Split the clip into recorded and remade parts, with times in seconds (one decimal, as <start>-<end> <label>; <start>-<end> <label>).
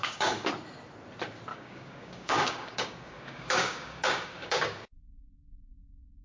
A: 0.0-0.5 remade; 0.5-1.5 recorded; 1.5-5.2 remade; 5.2-6.2 recorded